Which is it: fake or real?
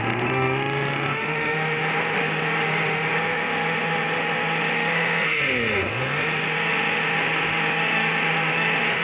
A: fake